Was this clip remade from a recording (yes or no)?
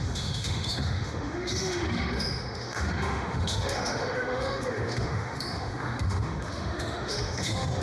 yes